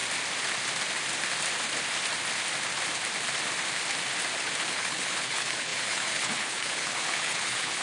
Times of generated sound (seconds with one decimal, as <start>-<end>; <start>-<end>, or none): 4.7-7.8